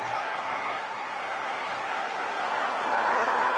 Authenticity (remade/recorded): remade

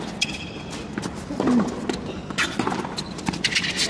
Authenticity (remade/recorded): recorded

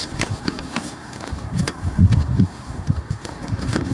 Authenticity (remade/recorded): remade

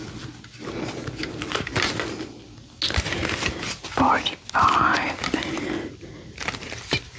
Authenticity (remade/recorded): recorded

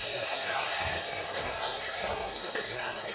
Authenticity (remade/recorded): remade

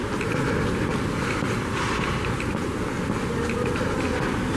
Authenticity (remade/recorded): recorded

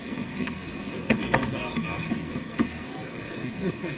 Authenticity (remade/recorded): remade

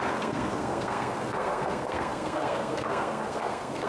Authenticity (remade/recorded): remade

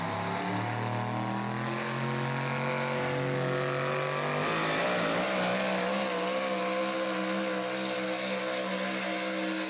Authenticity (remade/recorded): recorded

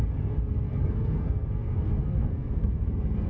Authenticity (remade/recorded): remade